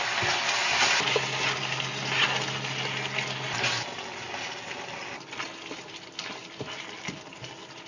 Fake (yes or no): no